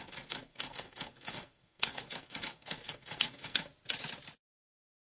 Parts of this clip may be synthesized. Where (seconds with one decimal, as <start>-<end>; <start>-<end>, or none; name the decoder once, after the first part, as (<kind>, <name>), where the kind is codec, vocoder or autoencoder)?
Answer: 0.0-3.7 (codec, SNAC)